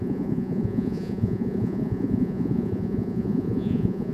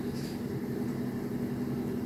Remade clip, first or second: first